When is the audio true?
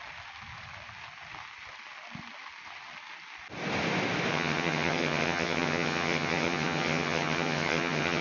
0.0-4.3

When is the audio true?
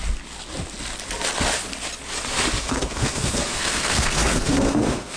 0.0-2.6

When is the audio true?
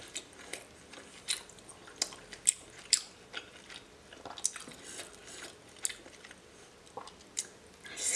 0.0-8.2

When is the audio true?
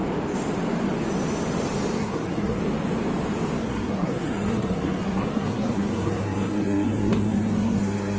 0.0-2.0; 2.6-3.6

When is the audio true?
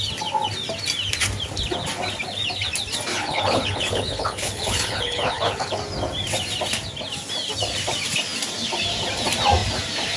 0.0-3.1; 5.8-10.2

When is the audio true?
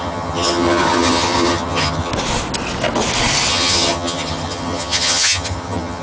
2.1-3.5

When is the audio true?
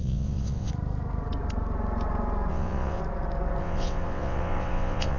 0.7-2.5; 3.0-3.6